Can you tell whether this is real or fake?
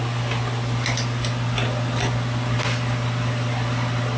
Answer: real